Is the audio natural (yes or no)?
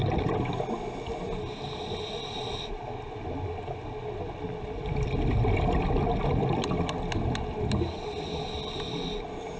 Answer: yes